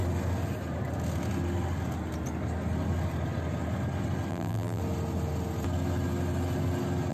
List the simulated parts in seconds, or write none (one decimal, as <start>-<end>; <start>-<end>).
4.3-4.8